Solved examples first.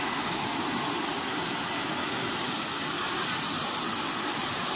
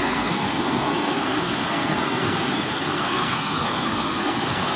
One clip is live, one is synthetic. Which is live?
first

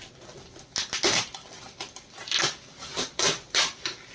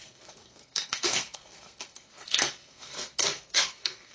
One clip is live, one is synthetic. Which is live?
first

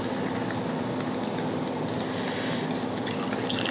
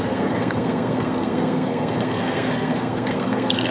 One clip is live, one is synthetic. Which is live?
first